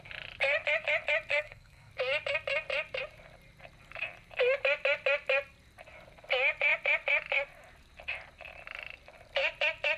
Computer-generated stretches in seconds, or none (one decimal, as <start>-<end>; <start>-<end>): 1.3-1.9